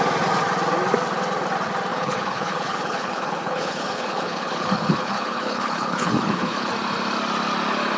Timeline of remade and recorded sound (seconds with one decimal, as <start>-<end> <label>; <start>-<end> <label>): 0.0-1.9 recorded; 1.9-6.7 remade; 6.7-8.0 recorded